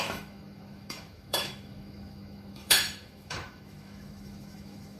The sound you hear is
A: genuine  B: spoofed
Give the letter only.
B